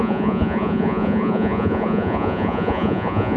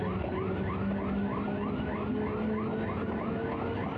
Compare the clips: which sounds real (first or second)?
second